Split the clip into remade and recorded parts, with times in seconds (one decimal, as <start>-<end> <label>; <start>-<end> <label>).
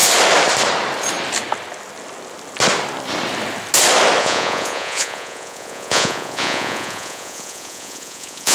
0.0-4.2 recorded; 4.2-8.5 remade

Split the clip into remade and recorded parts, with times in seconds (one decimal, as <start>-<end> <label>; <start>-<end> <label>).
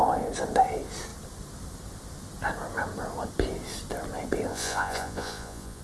0.0-4.5 recorded; 4.5-5.8 remade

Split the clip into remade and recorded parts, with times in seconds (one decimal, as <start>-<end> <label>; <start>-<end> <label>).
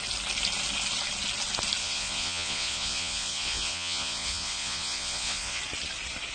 0.0-1.8 recorded; 1.8-5.6 remade; 5.6-6.3 recorded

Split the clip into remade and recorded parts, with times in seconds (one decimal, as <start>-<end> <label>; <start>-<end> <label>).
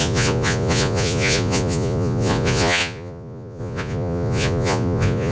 0.0-5.3 remade